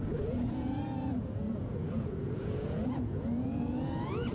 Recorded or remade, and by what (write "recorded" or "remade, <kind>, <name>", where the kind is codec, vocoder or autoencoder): remade, vocoder, Vocos